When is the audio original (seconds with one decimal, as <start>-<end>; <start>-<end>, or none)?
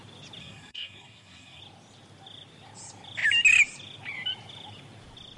0.0-0.4; 1.6-5.4